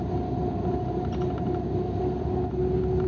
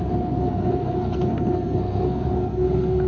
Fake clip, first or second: second